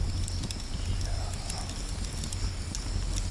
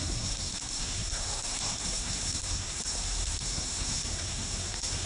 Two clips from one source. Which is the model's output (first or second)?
second